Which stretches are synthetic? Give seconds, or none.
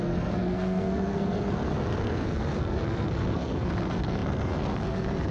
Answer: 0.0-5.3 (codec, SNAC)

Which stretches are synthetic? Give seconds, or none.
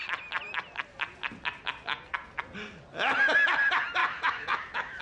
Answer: 4.0-5.0 (autoencoder, DAC-VAE)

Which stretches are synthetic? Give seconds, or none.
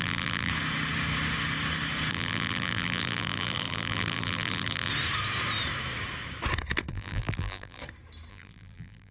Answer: 0.0-0.5 (vocoder, BigVGAN v2); 2.1-4.9; 6.9-7.8; 8.3-9.1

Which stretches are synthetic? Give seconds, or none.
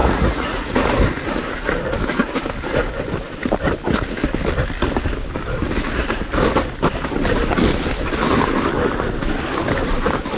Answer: 0.0-0.9 (vocoder, Vocos)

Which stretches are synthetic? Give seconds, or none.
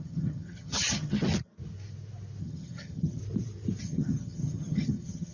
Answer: 0.0-1.3 (vocoder, HiFi-GAN); 2.4-3.2; 3.8-5.3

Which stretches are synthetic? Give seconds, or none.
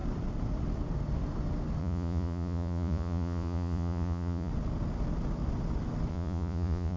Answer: 1.8-4.5 (vocoder, Vocos); 6.1-7.0